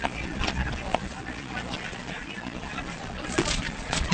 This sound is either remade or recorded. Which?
remade